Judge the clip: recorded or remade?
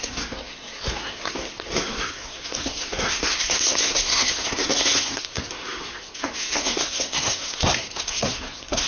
remade